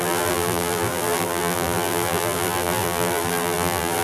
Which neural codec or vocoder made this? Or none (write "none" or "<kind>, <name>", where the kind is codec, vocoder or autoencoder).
vocoder, BigVGAN v2